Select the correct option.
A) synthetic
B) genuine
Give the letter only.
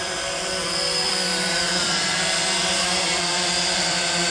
A